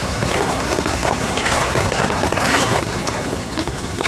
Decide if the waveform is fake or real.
fake